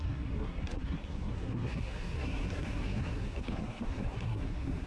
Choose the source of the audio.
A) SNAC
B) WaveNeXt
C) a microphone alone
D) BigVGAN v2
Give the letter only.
A